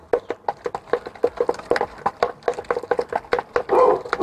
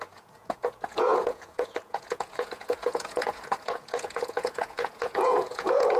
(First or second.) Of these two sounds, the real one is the first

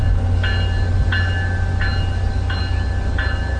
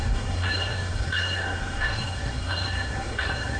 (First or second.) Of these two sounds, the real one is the first